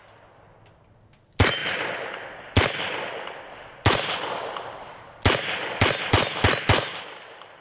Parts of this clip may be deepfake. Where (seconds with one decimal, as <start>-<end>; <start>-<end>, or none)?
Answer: none